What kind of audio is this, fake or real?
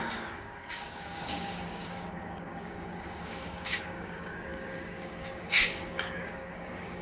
fake